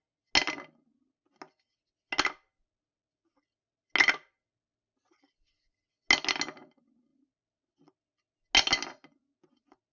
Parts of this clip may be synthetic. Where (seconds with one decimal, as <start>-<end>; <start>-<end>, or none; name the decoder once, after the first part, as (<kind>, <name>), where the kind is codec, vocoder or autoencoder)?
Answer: none